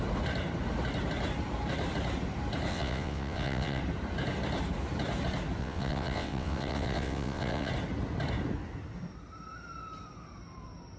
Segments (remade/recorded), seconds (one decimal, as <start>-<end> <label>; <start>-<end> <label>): 0.0-2.7 recorded; 2.7-3.8 remade; 3.8-5.6 recorded; 5.6-7.7 remade; 7.7-11.0 recorded